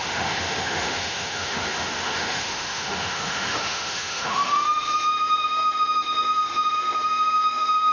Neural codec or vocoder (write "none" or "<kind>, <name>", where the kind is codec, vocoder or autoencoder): autoencoder, DAC-VAE